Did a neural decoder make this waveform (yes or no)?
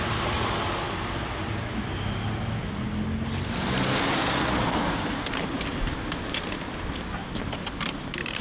no